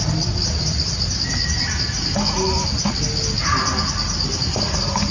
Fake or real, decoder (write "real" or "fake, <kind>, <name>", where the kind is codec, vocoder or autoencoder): real